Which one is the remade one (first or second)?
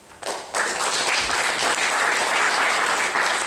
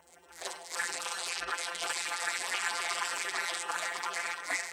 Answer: second